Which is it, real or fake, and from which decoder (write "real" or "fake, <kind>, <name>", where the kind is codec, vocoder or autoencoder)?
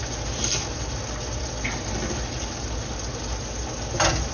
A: real